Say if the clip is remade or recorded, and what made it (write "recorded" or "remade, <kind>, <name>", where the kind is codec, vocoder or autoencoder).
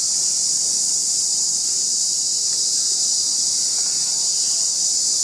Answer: recorded